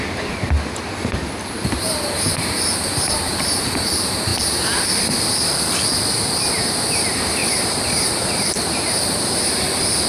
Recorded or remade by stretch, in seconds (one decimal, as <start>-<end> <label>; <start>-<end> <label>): 0.0-10.1 remade